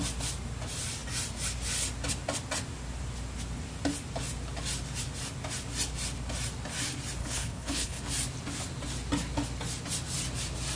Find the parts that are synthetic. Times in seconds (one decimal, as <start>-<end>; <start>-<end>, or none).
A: 7.2-8.0